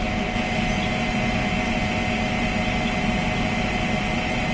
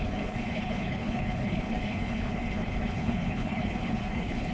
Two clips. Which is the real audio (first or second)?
first